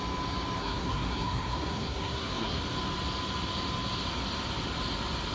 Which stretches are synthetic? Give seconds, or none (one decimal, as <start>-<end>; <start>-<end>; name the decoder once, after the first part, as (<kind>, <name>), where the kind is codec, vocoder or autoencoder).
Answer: 0.6-2.6 (codec, SNAC)